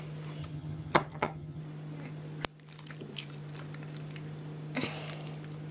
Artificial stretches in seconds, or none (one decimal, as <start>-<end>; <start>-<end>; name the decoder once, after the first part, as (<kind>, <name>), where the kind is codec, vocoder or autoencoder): 0.4-1.6 (vocoder, HiFi-GAN)